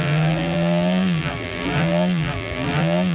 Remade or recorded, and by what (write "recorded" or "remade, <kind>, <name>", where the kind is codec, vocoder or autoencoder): remade, vocoder, BigVGAN v2